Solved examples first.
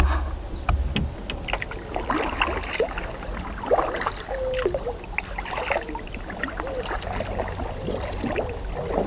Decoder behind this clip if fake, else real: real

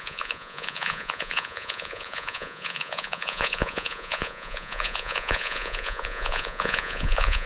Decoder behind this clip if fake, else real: fake, vocoder, Vocos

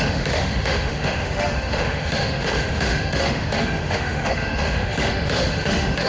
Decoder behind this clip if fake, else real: fake, autoencoder, DAC-VAE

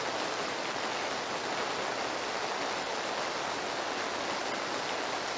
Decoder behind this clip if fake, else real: real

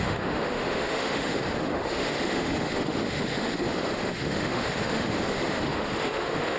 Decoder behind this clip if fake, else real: fake, autoencoder, DAC-VAE